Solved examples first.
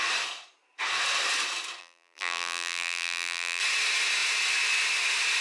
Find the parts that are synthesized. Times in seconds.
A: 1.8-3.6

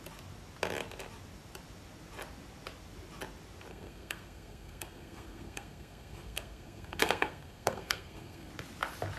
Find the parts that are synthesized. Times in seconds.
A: 3.7-8.5

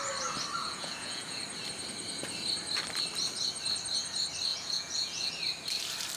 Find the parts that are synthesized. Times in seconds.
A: 0.6-1.4; 4.5-5.3

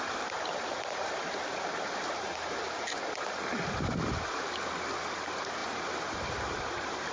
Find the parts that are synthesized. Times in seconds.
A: 0.0-7.1

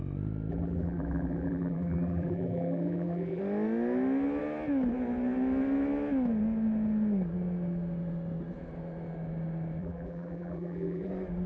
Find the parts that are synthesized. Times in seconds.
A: 0.5-3.4; 9.8-11.1

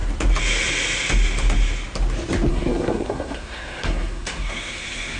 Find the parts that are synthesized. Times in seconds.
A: 2.5-5.2